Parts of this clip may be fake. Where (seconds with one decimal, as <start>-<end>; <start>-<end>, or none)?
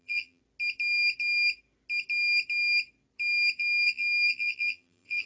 0.0-0.4; 3.6-5.3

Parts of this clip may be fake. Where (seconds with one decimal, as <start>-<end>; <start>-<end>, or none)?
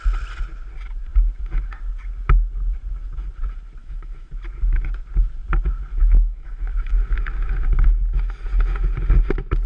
3.8-4.3; 6.0-6.9